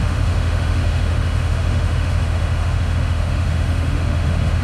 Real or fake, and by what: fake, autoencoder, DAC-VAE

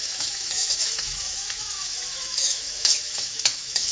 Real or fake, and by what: fake, autoencoder, DAC-VAE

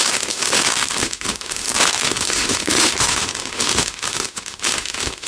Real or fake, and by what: fake, autoencoder, DAC-VAE